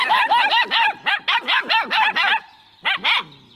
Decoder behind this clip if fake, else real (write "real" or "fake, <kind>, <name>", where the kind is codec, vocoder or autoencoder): real